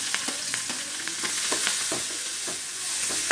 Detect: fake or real fake